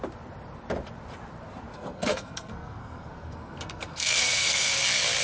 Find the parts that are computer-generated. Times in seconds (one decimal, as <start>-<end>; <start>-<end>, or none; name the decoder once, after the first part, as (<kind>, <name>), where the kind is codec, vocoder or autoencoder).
1.7-4.8 (codec, SNAC)